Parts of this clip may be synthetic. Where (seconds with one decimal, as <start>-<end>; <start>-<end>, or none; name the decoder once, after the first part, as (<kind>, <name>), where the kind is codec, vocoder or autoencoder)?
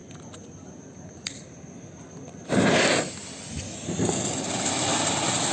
none